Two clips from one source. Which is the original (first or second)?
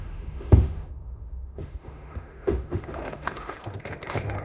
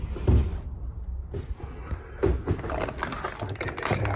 second